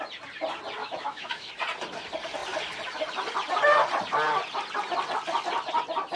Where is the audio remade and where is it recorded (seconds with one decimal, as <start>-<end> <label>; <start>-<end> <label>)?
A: 0.0-0.8 recorded; 0.8-1.5 remade; 1.5-6.2 recorded